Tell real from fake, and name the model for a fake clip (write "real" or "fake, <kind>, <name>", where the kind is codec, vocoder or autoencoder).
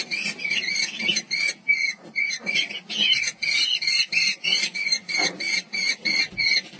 real